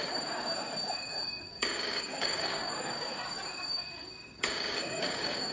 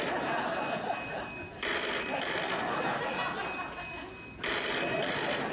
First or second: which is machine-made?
first